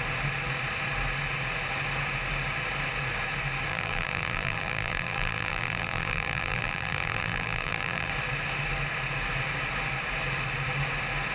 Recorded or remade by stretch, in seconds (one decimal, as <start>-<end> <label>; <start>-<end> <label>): 0.0-3.7 recorded; 3.7-8.1 remade; 8.1-11.3 recorded